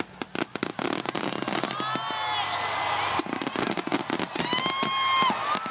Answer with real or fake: real